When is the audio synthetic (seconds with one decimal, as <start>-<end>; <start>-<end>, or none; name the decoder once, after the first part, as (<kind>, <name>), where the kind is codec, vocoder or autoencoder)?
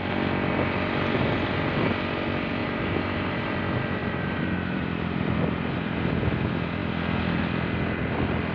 2.6-3.6 (vocoder, BigVGAN v2); 4.0-6.1